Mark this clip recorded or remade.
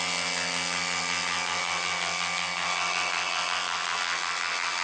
recorded